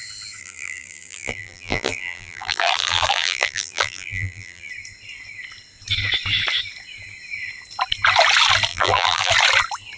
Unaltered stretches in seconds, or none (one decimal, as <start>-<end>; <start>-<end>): 0.0-0.4; 4.7-8.7; 9.3-10.0